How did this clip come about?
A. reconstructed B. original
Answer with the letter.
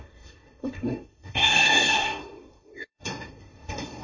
A